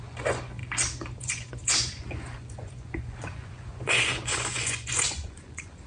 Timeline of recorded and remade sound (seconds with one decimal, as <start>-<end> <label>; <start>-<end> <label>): 0.0-0.6 remade; 0.6-1.2 recorded; 1.2-5.9 remade